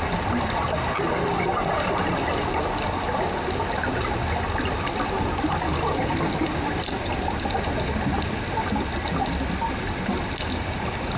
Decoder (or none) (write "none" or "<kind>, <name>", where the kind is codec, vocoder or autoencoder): none